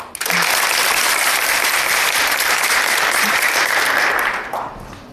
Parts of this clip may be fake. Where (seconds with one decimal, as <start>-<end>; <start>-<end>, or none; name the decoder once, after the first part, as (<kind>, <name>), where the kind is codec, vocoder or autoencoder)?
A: 0.8-3.9 (vocoder, BigVGAN v2)